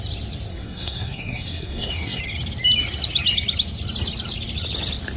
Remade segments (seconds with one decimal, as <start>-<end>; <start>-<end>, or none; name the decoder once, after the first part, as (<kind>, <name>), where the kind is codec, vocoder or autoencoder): 0.5-2.2 (codec, SNAC)